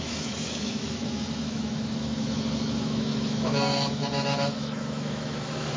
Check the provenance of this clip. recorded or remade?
remade